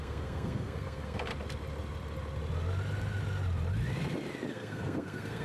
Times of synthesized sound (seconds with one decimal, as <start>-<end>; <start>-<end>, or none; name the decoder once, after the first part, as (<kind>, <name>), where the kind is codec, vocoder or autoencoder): 0.0-1.3 (codec, SNAC); 4.5-5.4